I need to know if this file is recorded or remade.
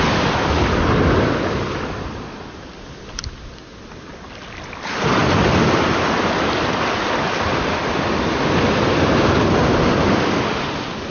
recorded